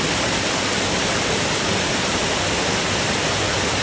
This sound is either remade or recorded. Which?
recorded